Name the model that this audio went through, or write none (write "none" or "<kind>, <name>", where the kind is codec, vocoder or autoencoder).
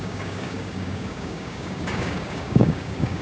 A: codec, DAC